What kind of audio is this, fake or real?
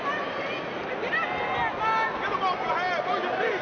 real